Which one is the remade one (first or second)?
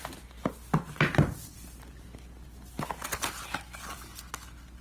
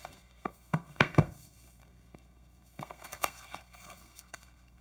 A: second